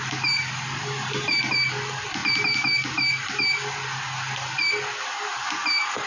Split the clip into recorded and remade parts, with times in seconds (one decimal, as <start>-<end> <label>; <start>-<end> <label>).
0.0-6.1 recorded